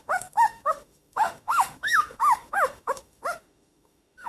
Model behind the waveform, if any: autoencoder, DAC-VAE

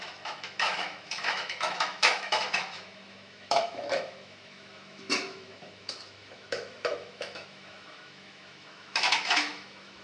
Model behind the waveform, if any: autoencoder, DAC-VAE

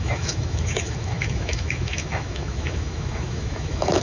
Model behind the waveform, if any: autoencoder, DAC-VAE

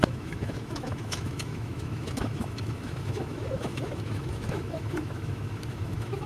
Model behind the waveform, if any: autoencoder, DAC-VAE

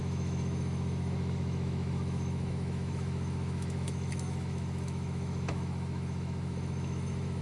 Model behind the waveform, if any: autoencoder, DAC-VAE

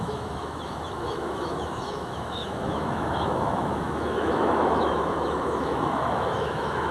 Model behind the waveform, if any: autoencoder, DAC-VAE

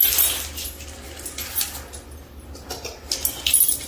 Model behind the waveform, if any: none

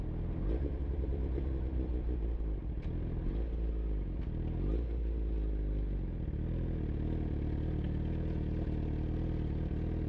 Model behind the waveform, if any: none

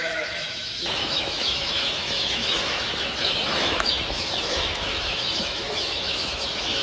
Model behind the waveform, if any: autoencoder, DAC-VAE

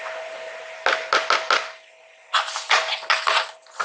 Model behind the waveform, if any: none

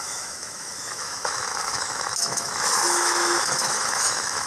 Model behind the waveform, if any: autoencoder, DAC-VAE